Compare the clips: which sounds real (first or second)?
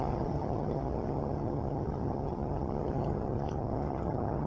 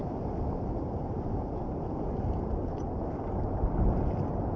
second